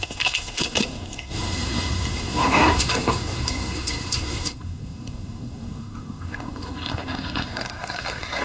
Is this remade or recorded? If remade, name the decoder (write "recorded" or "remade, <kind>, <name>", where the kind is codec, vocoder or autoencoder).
remade, codec, SNAC